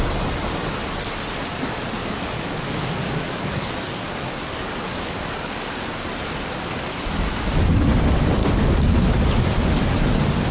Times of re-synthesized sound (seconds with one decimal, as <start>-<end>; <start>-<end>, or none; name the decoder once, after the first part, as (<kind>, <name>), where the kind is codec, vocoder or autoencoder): 2.0-7.0 (codec, DAC); 8.4-9.1